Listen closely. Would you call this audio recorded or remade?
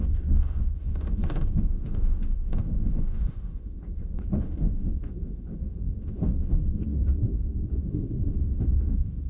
remade